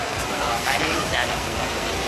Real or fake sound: fake